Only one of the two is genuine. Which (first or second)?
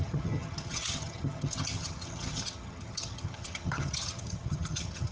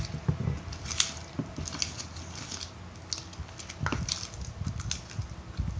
second